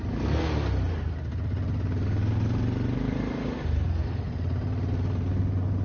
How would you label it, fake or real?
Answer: real